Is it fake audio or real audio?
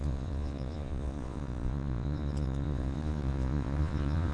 fake